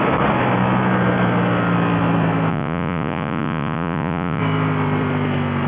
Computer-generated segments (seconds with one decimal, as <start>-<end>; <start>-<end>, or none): 2.5-4.4